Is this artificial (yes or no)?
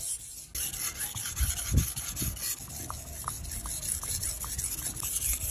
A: no